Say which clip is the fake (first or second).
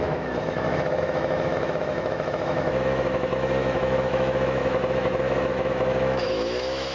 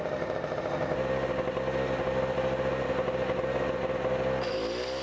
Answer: first